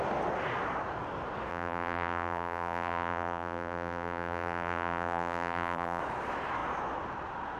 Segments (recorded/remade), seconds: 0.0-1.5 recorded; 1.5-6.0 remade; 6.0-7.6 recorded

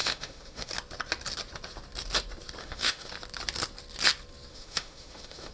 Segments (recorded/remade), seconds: 0.0-0.7 remade; 0.7-2.6 recorded; 2.6-3.1 remade; 3.1-4.5 recorded; 4.5-5.5 remade

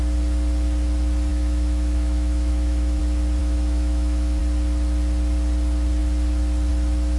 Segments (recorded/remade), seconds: 0.0-1.3 recorded; 1.3-3.0 remade; 3.0-3.4 recorded; 3.4-4.4 remade; 4.4-7.2 recorded

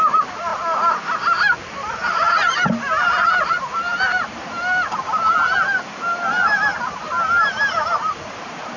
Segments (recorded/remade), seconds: 0.0-8.8 recorded

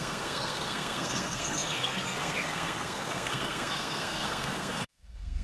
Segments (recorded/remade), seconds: 0.0-5.4 remade

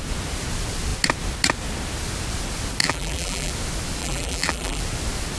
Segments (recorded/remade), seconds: 0.0-2.8 recorded; 2.8-3.5 remade; 3.5-4.0 recorded; 4.0-4.8 remade; 4.8-5.4 recorded

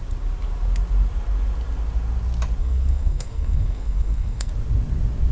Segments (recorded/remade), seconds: 0.0-2.6 recorded; 2.6-4.5 remade; 4.5-5.3 recorded